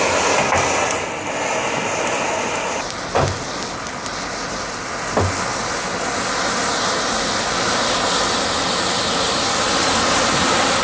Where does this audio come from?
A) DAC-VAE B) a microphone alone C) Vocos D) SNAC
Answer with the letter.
B